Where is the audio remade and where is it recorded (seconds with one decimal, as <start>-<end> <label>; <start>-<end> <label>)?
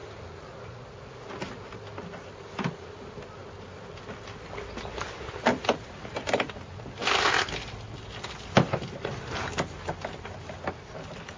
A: 0.0-3.4 recorded; 3.4-5.3 remade; 5.3-11.4 recorded